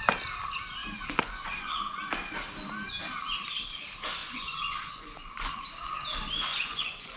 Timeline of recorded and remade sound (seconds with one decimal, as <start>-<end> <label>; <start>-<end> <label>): 0.0-0.8 recorded; 0.8-2.1 remade; 2.1-4.2 recorded; 4.2-5.6 remade; 5.6-6.5 recorded; 6.5-7.2 remade